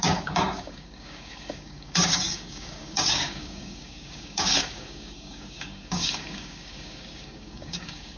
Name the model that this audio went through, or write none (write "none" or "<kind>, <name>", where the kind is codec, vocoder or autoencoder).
codec, DAC